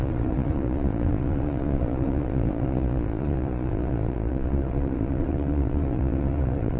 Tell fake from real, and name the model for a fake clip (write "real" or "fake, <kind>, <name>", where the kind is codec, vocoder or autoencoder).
fake, vocoder, Vocos